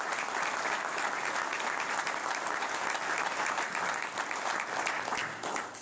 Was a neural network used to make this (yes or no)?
no